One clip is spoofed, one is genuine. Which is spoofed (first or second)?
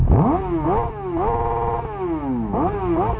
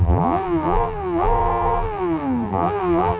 second